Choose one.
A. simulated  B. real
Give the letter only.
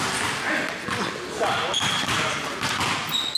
B